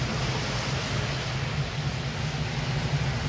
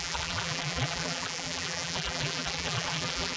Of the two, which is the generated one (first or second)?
second